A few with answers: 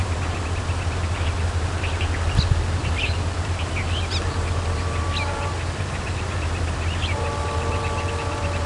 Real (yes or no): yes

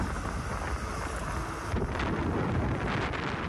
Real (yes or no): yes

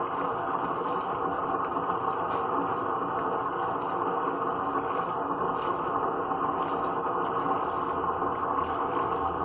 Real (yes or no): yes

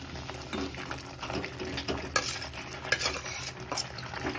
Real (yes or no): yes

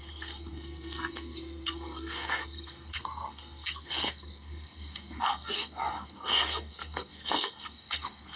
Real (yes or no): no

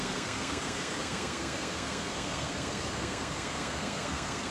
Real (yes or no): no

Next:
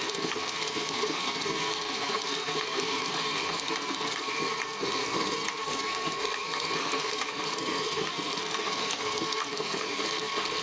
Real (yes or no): no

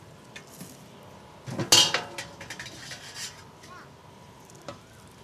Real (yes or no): yes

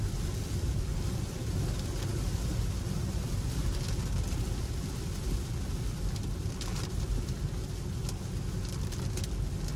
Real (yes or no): yes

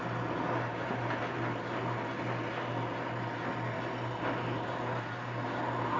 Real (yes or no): yes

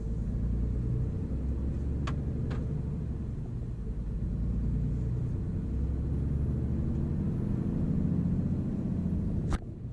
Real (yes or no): yes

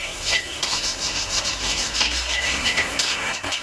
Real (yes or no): no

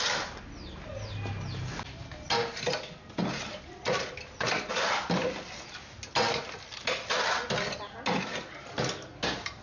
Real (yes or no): yes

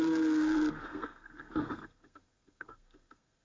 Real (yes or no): no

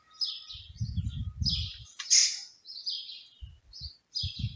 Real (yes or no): yes